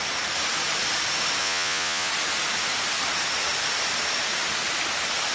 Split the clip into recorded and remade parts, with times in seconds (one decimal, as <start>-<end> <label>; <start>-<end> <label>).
0.0-1.4 recorded; 1.4-2.1 remade; 2.1-5.3 recorded